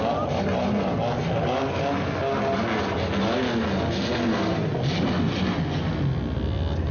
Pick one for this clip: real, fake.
real